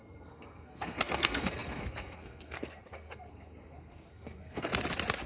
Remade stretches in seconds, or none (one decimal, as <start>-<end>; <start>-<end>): 0.0-4.7